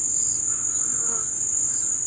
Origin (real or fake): real